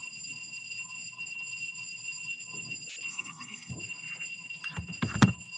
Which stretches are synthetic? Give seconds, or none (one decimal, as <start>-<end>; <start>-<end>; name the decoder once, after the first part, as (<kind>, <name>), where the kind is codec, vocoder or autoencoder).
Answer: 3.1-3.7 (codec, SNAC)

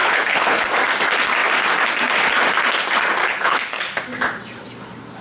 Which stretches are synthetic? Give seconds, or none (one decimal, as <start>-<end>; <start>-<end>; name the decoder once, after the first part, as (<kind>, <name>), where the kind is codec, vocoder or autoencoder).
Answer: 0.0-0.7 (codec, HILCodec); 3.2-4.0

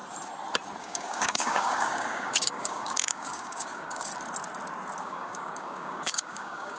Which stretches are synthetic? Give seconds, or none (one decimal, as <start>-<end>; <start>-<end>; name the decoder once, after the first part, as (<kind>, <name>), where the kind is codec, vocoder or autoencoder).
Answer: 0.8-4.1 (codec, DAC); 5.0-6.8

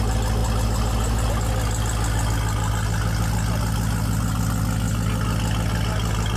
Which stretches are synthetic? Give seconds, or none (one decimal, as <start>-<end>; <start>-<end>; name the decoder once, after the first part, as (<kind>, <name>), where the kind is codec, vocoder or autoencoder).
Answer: none

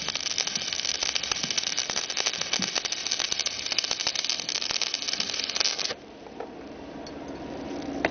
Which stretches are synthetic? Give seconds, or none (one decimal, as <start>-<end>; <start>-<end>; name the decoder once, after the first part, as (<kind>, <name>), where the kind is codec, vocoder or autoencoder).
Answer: none

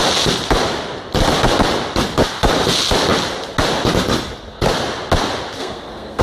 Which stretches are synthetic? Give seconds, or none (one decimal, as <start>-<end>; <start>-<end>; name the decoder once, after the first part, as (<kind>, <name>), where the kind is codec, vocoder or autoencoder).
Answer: 5.6-6.2 (codec, SNAC)